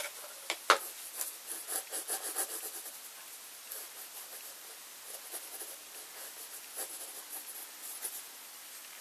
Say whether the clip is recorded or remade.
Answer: recorded